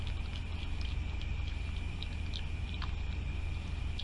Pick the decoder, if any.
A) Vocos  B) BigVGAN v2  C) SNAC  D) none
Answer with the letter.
D